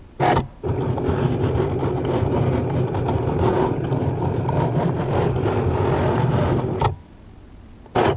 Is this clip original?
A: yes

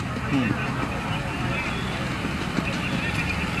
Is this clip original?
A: yes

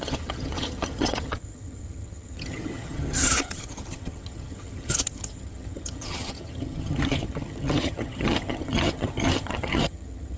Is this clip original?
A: no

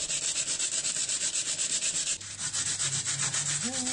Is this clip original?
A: yes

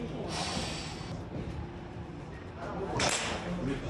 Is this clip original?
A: yes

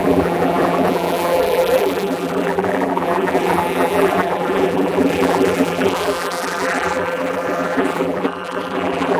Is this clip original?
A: no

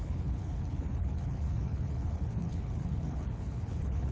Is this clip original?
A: no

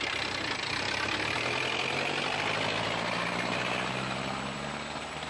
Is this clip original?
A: no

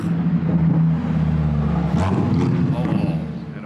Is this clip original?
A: yes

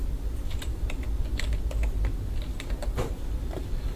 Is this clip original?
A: no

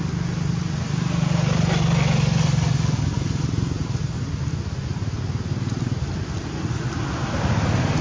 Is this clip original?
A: yes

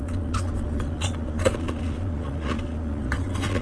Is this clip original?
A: no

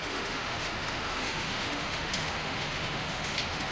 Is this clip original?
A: no